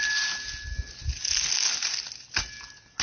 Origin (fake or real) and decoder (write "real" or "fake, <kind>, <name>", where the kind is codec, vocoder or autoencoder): real